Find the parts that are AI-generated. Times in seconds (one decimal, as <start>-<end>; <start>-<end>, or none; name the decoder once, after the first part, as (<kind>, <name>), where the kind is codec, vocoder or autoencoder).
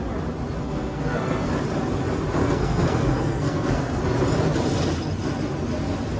0.6-1.5 (codec, SNAC); 2.4-4.0